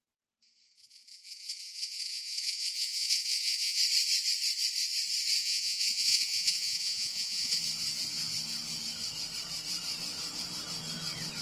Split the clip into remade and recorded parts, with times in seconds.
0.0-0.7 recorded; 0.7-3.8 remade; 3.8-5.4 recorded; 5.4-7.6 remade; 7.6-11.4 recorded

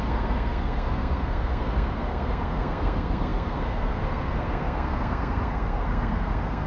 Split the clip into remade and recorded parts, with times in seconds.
0.0-6.7 remade

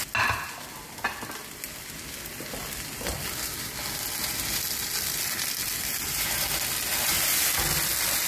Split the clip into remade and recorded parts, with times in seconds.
0.0-8.3 recorded

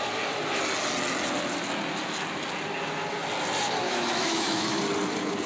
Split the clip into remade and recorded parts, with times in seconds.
0.0-3.8 recorded; 3.8-4.8 remade; 4.8-5.5 recorded

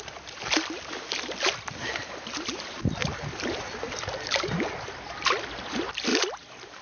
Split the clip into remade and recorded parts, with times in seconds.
0.0-3.0 remade; 3.0-5.4 recorded; 5.4-6.1 remade; 6.1-6.8 recorded

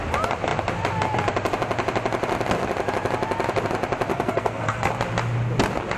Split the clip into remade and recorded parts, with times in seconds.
0.0-4.1 recorded; 4.1-4.9 remade; 4.9-6.0 recorded